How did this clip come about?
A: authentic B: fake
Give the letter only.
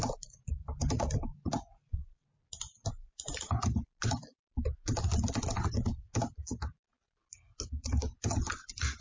A